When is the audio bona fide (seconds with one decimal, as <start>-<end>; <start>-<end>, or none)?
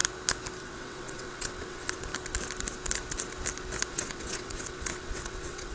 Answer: 0.0-0.6; 2.1-3.9